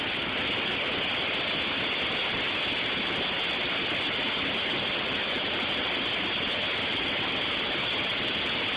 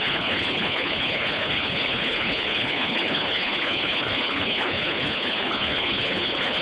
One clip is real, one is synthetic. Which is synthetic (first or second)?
second